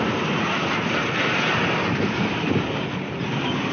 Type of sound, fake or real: real